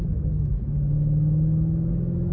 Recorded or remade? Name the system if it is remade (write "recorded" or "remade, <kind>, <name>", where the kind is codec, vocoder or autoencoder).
remade, autoencoder, DAC-VAE